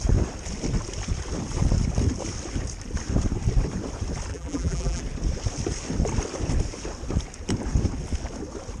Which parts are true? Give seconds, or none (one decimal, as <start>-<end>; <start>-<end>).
0.0-4.3; 5.0-8.8